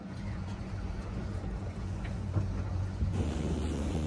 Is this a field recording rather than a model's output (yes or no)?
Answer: no